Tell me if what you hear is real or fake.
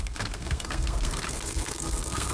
fake